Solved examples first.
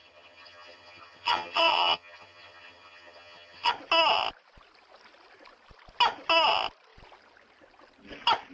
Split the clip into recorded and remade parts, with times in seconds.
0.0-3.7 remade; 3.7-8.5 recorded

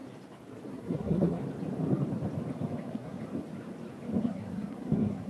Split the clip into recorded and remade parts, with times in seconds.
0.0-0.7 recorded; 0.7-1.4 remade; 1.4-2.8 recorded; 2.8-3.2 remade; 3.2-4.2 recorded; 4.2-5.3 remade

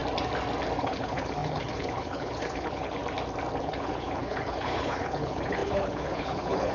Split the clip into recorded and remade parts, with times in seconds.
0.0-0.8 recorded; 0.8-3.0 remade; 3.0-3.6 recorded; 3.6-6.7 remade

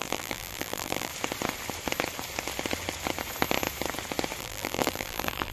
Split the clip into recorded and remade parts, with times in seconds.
0.0-1.1 remade; 1.1-4.4 recorded; 4.4-5.5 remade

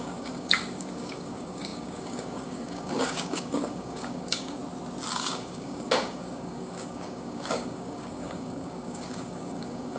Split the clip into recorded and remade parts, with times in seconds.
0.0-4.6 remade; 4.6-5.1 recorded; 5.1-10.0 remade